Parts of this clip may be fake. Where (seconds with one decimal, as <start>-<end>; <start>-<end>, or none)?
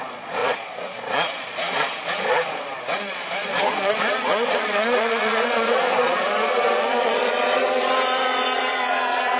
0.0-9.4